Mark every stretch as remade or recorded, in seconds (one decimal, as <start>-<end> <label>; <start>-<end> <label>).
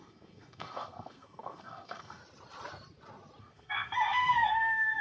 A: 0.0-2.2 remade; 2.2-3.4 recorded; 3.4-5.0 remade